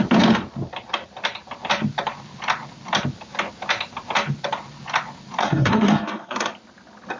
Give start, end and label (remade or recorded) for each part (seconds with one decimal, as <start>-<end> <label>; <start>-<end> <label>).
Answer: 0.0-5.4 recorded; 5.4-6.5 remade; 6.5-7.2 recorded